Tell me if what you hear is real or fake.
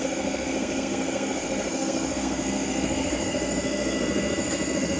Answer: fake